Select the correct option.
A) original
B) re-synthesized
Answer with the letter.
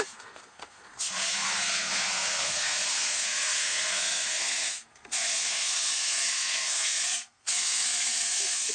B